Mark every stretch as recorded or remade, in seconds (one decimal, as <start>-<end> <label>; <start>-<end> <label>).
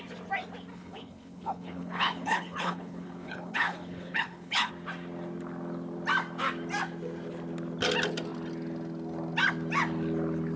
0.0-0.7 recorded; 0.7-4.7 remade; 4.7-10.6 recorded